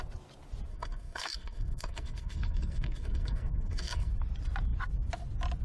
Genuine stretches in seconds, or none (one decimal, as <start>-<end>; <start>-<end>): 0.0-0.7; 4.1-5.6

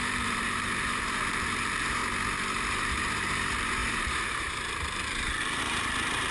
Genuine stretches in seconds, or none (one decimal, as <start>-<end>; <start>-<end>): 2.0-2.7

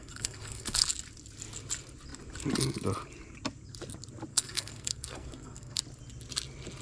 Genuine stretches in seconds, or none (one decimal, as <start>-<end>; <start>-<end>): 0.8-4.3; 5.8-6.8

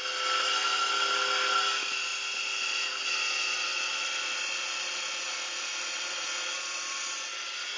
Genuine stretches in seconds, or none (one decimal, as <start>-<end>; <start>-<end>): 0.0-3.7; 7.0-7.8

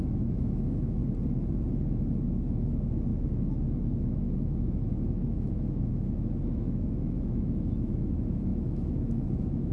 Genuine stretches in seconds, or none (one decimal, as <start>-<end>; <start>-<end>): 1.0-2.2